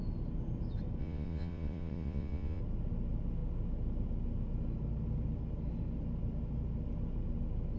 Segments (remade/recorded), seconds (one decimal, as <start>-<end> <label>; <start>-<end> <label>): 0.0-1.0 recorded; 1.0-2.6 remade; 2.6-7.8 recorded